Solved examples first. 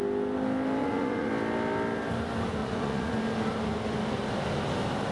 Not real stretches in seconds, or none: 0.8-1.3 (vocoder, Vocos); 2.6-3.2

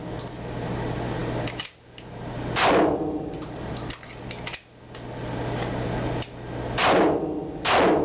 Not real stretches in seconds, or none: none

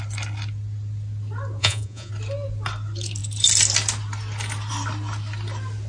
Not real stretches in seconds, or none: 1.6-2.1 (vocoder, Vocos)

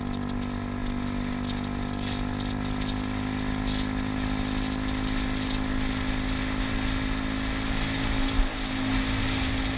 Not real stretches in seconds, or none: none